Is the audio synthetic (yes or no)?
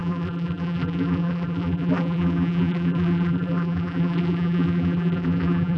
yes